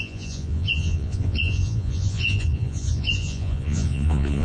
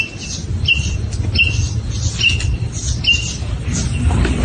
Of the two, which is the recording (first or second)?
second